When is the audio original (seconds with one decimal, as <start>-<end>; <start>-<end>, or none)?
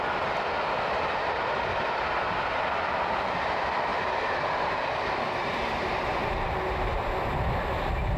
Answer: 0.0-3.9; 6.5-8.2